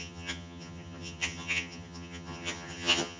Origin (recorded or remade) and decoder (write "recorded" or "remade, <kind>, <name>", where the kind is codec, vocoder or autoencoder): remade, vocoder, HiFi-GAN